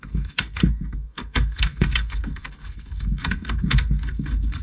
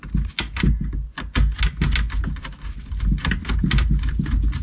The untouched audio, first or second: second